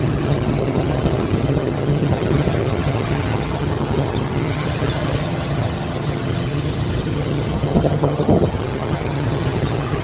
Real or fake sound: fake